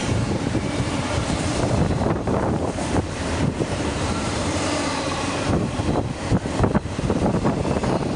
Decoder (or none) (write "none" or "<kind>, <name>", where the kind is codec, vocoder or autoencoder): vocoder, BigVGAN v2